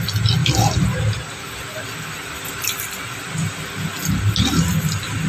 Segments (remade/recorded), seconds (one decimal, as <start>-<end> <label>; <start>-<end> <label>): 0.0-5.3 recorded